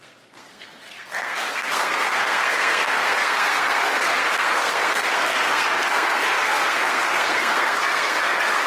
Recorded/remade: remade